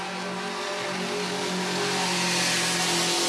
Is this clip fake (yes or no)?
no